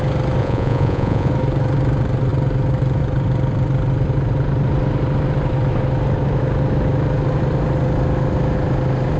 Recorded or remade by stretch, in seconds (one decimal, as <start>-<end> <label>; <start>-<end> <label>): 0.0-0.4 recorded; 0.4-1.3 remade; 1.3-9.2 recorded